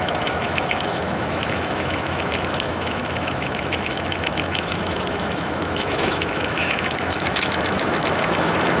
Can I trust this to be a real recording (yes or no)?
no